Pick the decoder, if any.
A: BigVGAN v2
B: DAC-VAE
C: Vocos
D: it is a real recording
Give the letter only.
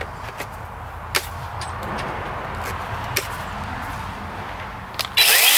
D